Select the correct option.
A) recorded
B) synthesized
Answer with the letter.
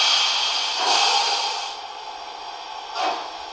A